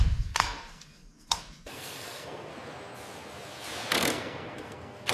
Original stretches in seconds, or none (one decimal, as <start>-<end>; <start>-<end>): 2.5-3.9